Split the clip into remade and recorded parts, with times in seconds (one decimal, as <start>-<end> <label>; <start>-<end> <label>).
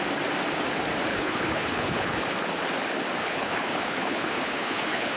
0.0-1.1 recorded; 1.1-2.2 remade; 2.2-3.2 recorded; 3.2-5.2 remade